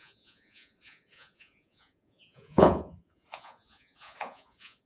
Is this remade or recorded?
remade